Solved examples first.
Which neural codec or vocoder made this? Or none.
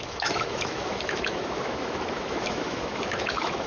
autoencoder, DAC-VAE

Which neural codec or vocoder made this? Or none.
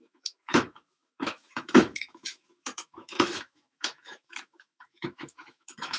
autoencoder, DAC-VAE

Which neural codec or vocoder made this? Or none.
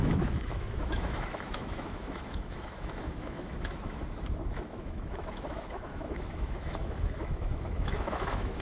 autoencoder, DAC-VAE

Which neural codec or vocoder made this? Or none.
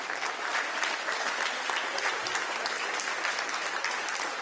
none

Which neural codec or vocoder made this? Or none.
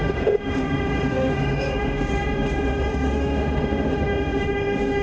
autoencoder, DAC-VAE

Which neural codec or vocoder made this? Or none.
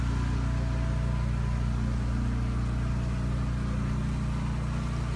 none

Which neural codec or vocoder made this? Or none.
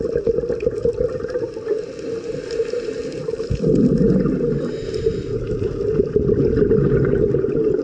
none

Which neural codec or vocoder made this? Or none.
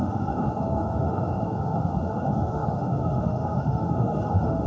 autoencoder, DAC-VAE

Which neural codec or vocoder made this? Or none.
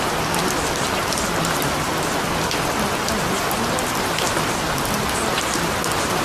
none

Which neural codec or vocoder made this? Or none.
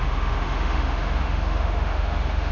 autoencoder, DAC-VAE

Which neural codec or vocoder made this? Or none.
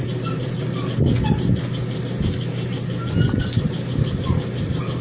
none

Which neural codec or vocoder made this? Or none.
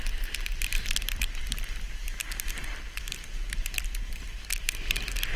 none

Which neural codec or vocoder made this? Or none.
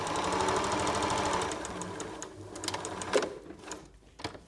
none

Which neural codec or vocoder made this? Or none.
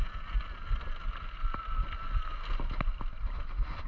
none